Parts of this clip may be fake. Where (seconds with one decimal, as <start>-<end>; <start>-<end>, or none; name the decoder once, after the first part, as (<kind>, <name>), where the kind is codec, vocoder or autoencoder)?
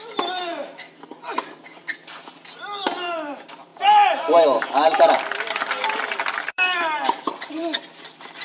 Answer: 0.0-8.4 (vocoder, BigVGAN v2)